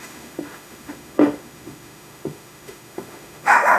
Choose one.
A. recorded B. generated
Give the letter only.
B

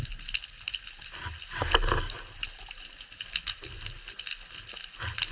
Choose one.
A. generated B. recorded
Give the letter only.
B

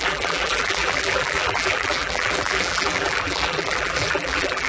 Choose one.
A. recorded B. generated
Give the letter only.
B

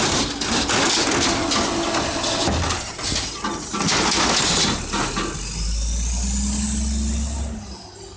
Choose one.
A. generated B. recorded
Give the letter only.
B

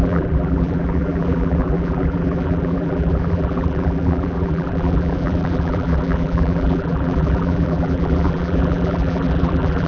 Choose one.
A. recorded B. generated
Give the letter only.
B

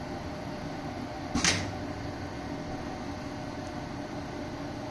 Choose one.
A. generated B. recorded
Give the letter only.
B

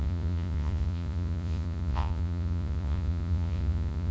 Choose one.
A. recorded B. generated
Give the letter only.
B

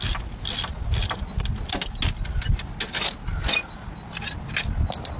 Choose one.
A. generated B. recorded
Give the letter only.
B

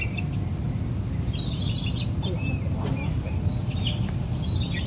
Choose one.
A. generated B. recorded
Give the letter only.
B